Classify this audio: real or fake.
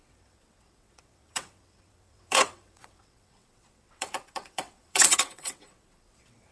fake